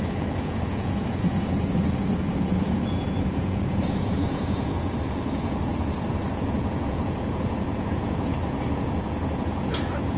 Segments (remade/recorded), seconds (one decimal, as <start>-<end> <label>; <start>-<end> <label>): 0.0-5.7 remade; 5.7-6.3 recorded; 6.3-10.2 remade